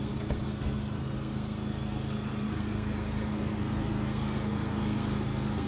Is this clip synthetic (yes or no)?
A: yes